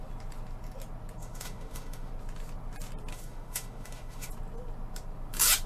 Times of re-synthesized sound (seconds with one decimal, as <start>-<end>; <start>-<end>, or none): 1.2-2.1; 3.1-4.3